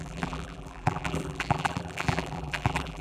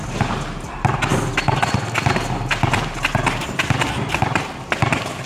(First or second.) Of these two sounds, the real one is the second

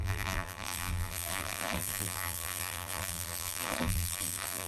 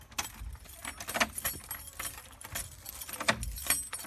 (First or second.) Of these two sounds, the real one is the second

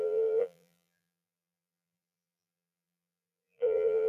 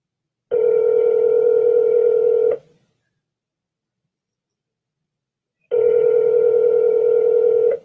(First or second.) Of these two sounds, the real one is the second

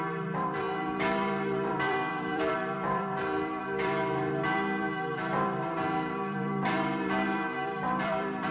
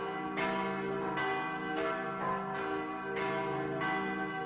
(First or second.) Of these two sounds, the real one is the second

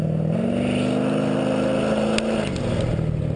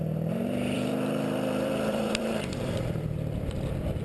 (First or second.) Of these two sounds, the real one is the first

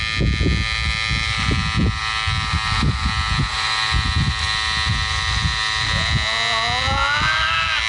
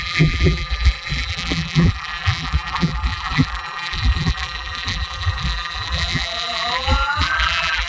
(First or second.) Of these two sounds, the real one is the first